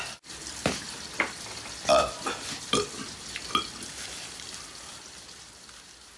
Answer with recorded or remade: recorded